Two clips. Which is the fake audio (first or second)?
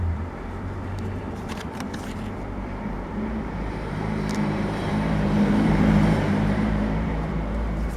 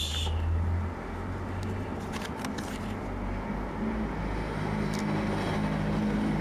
first